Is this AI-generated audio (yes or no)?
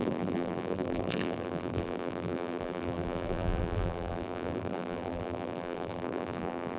yes